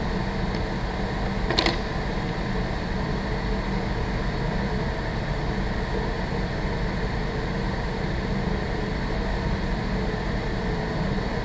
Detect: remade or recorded recorded